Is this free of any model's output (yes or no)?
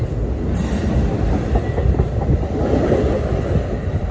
yes